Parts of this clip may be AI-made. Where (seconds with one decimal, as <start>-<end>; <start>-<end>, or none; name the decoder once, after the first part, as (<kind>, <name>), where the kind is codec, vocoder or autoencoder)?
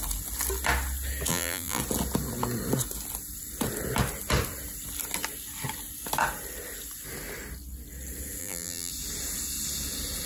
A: 1.3-1.8 (vocoder, BigVGAN v2); 8.4-8.9